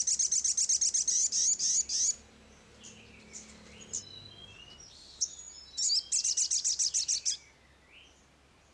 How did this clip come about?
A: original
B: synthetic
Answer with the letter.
A